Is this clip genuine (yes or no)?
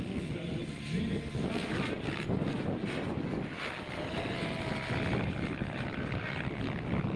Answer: yes